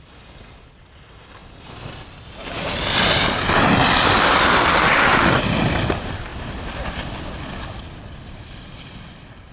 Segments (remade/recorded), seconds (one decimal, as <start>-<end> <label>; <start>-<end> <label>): 0.0-9.5 recorded